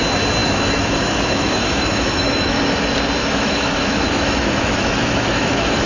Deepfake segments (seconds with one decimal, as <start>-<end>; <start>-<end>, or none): 0.4-2.6; 3.2-5.9